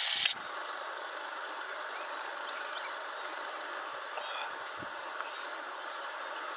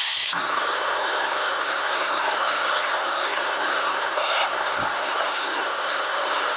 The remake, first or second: second